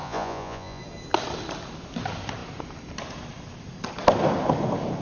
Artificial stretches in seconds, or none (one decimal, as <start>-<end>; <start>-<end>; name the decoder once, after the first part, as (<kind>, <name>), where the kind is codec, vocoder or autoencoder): 0.0-0.8 (vocoder, Vocos)